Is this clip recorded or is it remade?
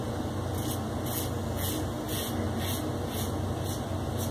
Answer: recorded